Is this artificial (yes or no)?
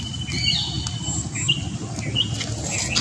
no